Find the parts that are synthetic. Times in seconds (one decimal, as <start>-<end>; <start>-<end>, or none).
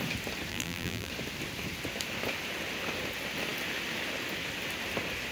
0.5-1.1